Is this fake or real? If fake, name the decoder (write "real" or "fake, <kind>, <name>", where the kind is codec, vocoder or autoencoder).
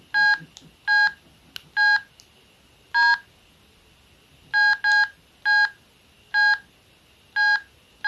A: real